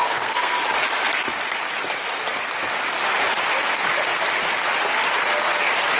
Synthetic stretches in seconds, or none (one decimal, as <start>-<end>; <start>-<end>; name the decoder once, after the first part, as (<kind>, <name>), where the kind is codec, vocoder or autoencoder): 0.0-0.6 (codec, SNAC)